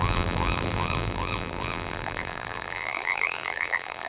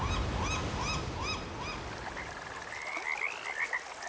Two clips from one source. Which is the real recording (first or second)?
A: second